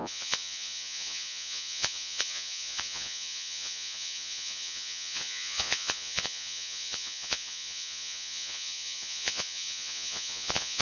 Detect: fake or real fake